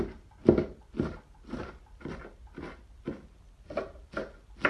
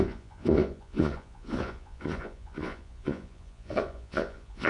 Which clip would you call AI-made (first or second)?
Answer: second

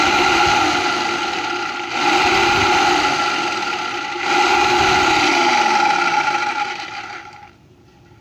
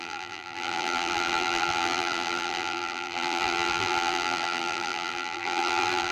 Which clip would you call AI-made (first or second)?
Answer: second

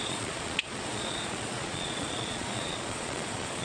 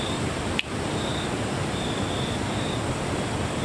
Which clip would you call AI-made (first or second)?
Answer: first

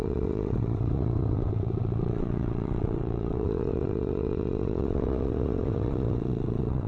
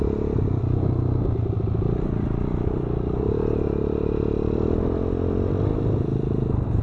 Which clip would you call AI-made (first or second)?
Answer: first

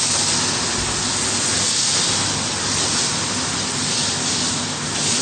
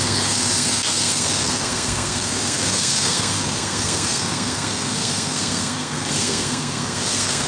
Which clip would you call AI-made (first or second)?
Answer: second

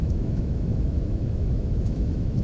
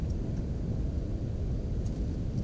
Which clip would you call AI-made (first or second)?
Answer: first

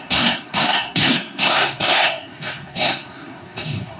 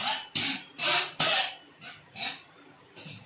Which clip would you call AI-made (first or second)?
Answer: first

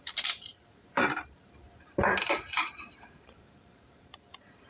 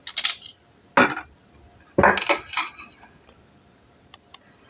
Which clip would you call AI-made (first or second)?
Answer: first